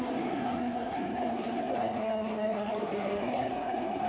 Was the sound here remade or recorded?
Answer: remade